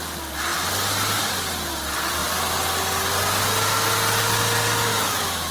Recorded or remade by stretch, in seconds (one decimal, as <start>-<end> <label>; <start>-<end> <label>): 0.0-4.9 recorded; 4.9-5.5 remade

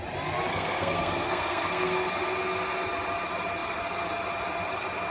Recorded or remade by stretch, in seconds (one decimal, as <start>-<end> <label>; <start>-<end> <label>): 0.0-0.5 recorded; 0.5-2.1 remade; 2.1-5.1 recorded

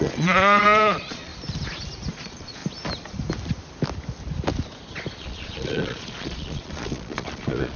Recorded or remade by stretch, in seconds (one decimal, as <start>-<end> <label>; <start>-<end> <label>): 0.0-1.3 remade; 1.3-2.1 recorded; 2.1-2.6 remade; 2.6-5.1 recorded; 5.1-7.8 remade

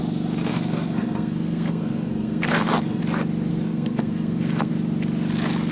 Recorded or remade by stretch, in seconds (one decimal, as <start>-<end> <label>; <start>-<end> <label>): 0.0-0.5 recorded; 0.5-3.0 remade; 3.0-3.5 recorded; 3.5-4.7 remade; 4.7-5.7 recorded

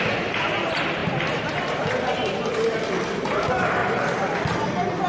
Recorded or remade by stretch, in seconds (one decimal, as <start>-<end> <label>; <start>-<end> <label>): 0.0-1.0 recorded; 1.0-3.3 remade; 3.3-3.8 recorded; 3.8-4.4 remade; 4.4-5.1 recorded

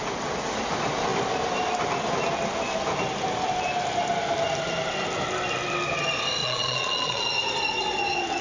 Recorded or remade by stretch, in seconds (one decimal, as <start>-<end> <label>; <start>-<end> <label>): 0.0-6.4 recorded; 6.4-7.3 remade; 7.3-8.4 recorded

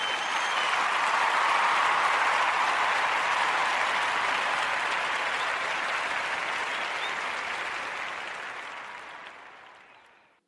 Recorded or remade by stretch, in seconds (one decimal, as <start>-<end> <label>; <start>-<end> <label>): 0.0-10.5 recorded

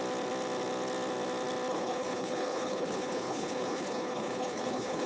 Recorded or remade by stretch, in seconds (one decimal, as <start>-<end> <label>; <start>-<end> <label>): 0.0-1.7 recorded; 1.7-5.1 remade